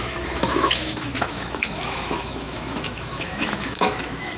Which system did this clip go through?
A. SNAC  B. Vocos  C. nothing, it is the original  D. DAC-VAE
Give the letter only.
D